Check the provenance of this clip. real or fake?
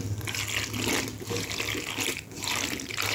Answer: real